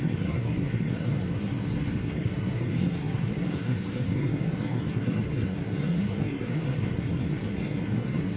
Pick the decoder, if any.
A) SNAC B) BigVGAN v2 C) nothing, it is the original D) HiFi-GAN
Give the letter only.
A